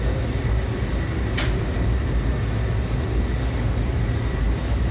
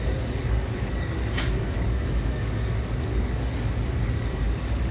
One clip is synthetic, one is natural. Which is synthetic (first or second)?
second